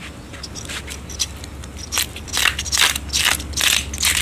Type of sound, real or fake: real